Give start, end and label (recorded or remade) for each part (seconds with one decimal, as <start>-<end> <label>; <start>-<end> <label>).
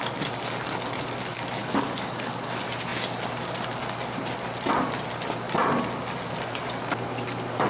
0.0-1.6 recorded; 1.6-2.5 remade; 2.5-7.7 recorded